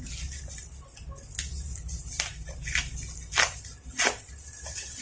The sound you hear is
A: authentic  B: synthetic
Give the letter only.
A